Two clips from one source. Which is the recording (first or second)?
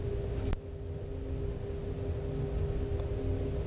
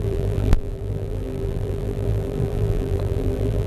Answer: first